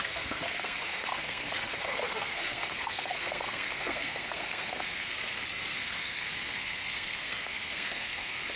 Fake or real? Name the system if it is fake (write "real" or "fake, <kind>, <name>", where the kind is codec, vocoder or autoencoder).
fake, codec, SNAC